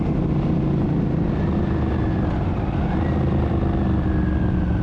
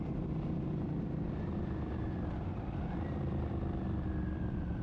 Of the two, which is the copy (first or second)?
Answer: second